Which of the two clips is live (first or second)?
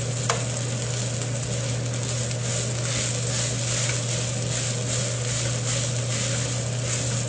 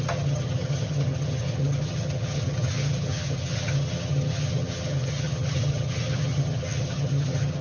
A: first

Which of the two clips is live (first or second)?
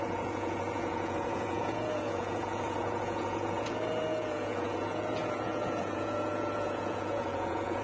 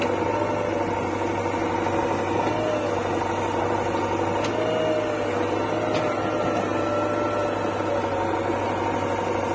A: second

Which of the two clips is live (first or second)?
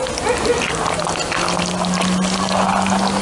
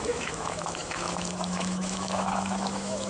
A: first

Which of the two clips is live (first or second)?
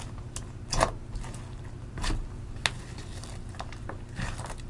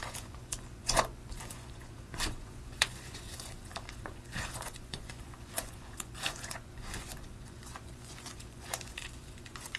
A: first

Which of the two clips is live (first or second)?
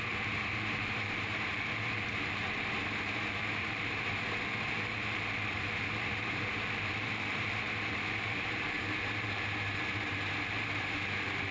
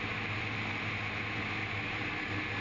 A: second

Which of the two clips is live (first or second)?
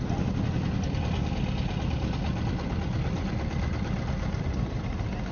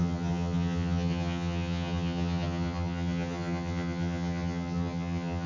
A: first